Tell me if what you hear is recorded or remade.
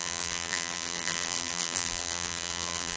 remade